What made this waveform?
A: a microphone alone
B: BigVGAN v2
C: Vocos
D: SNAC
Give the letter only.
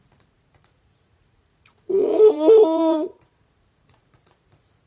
C